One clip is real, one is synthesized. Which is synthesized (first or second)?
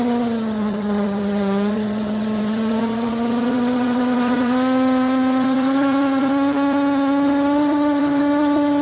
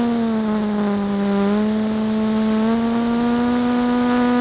first